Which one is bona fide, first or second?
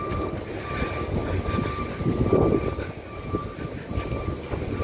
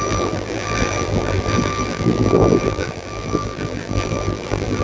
first